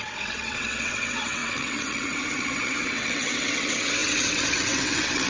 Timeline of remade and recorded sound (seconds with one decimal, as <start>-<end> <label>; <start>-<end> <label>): 0.0-5.3 remade